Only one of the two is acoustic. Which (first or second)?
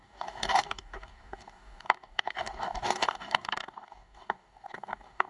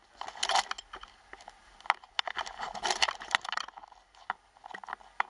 second